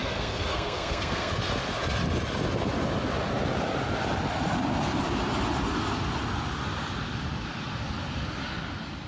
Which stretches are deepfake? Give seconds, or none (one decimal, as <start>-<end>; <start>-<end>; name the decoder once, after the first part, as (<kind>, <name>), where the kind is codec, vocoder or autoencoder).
0.0-1.3 (codec, SNAC)